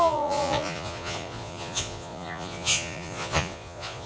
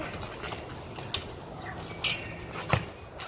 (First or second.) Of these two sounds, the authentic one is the second